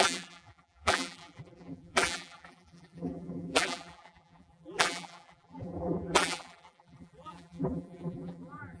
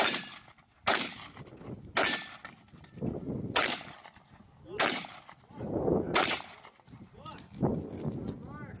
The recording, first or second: second